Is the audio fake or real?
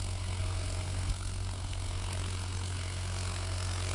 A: fake